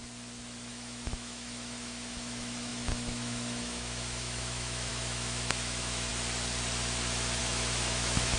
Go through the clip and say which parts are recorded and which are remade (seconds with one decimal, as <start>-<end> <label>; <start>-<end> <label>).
0.0-0.7 recorded; 0.7-6.1 remade; 6.1-7.4 recorded; 7.4-8.4 remade

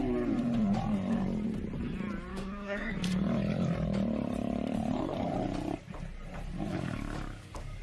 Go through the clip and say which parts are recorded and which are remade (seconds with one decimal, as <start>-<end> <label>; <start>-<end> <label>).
0.0-2.3 recorded; 2.3-2.9 remade; 2.9-6.7 recorded; 6.7-7.8 remade

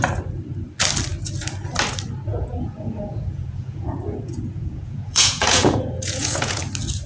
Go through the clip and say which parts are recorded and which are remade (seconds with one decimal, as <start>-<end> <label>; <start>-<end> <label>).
0.0-2.3 recorded; 2.3-6.6 remade; 6.6-7.1 recorded

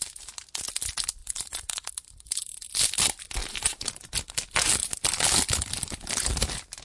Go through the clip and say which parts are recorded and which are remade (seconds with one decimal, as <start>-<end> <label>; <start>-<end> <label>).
0.0-1.2 recorded; 1.2-1.9 remade; 1.9-3.4 recorded; 3.4-4.2 remade; 4.2-6.8 recorded

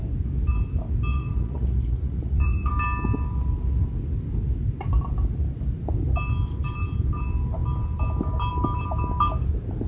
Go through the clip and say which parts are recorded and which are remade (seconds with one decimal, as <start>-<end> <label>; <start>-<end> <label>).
0.0-1.1 recorded; 1.1-2.7 remade; 2.7-9.9 recorded

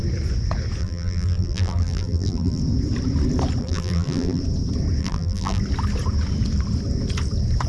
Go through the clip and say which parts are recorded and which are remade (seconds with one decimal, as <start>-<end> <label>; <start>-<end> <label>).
0.0-0.8 recorded; 0.8-2.6 remade; 2.6-3.6 recorded; 3.6-4.4 remade; 4.4-5.0 recorded; 5.0-5.6 remade; 5.6-7.7 recorded